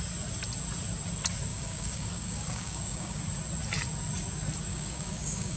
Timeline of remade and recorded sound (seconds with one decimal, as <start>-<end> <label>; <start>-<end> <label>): 0.0-1.5 recorded; 1.5-3.2 remade; 3.2-4.7 recorded; 4.7-5.6 remade